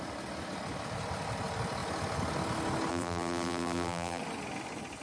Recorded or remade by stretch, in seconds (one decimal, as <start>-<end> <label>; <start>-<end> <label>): 0.0-2.9 recorded; 2.9-4.2 remade; 4.2-5.0 recorded